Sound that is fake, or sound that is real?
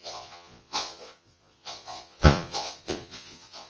fake